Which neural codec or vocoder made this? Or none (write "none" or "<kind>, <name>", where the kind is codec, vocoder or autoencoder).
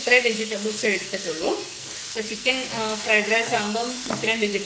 codec, SNAC